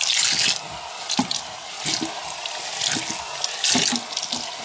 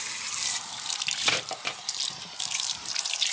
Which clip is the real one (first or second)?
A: first